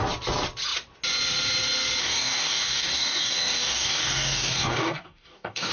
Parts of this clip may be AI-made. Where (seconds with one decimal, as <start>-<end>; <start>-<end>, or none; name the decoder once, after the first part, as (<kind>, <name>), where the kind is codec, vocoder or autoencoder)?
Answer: 2.0-5.7 (codec, DAC)